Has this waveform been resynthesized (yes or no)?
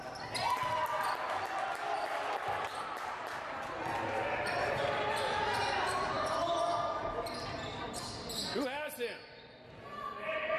no